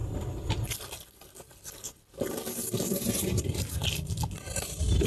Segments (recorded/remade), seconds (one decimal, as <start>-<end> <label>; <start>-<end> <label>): 0.0-5.1 recorded